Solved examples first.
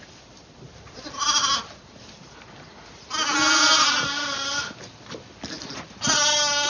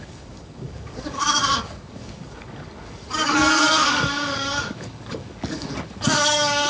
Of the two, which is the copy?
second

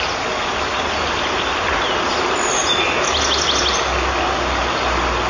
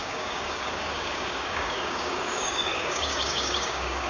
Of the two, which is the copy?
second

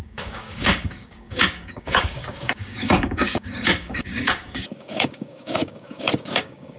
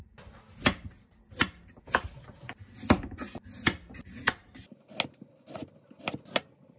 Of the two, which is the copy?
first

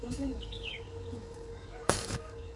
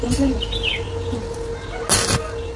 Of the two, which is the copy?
first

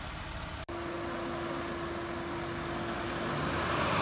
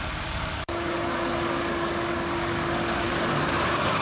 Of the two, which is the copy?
second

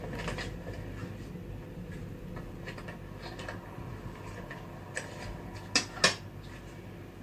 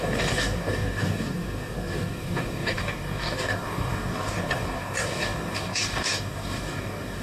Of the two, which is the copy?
second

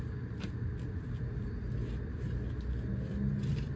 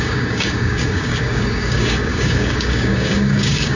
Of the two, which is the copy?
second